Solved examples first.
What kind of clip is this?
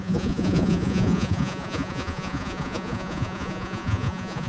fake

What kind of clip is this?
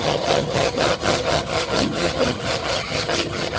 fake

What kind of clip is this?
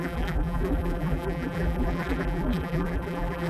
fake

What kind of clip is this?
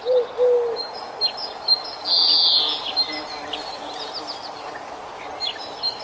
real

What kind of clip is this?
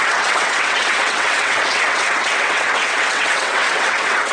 fake